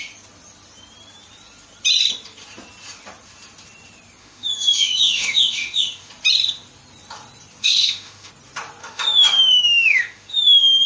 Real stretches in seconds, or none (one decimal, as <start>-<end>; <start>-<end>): 0.0-4.2; 6.1-7.6; 8.3-8.8